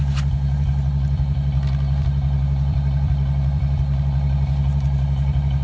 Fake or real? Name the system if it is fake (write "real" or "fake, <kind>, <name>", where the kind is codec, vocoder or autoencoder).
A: real